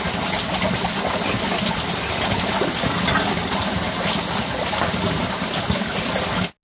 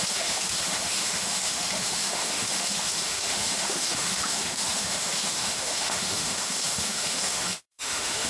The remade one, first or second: second